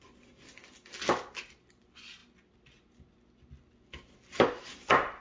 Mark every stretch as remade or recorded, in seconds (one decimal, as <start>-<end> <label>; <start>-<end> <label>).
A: 0.0-5.2 recorded